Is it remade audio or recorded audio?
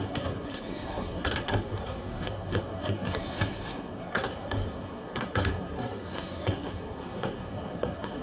remade